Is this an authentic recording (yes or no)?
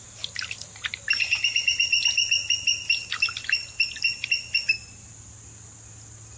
yes